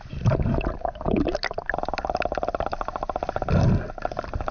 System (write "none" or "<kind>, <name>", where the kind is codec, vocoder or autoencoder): none